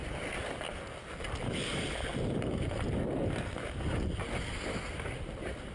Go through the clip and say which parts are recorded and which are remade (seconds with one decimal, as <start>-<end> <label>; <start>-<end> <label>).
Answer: 0.0-5.7 recorded